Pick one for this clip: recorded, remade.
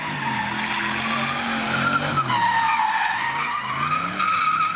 recorded